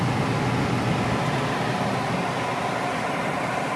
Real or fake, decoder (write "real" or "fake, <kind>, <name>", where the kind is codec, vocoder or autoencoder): real